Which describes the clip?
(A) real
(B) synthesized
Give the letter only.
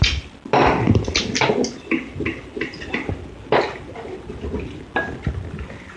A